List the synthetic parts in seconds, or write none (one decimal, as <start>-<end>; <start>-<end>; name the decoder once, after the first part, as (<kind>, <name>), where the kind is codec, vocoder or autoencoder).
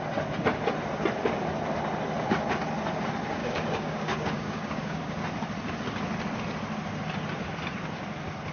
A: 3.4-5.2 (codec, DAC)